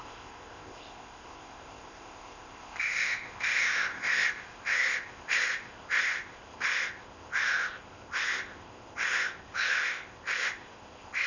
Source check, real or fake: fake